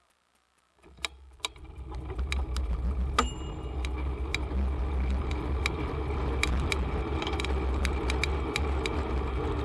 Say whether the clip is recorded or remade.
recorded